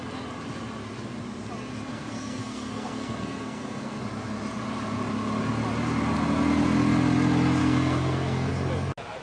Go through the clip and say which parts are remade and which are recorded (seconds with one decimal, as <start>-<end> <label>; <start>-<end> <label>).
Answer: 0.0-1.9 recorded; 1.9-4.0 remade; 4.0-7.6 recorded; 7.6-8.5 remade; 8.5-9.2 recorded